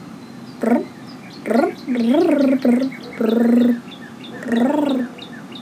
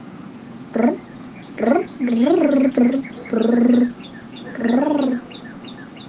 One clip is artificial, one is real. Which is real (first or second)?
first